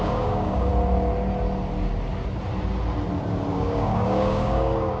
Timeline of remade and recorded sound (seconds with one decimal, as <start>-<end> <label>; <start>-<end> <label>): 0.0-0.7 remade; 0.7-3.5 recorded; 3.5-5.0 remade